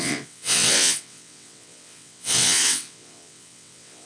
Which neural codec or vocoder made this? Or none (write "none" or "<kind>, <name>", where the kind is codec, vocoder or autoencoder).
vocoder, WaveNeXt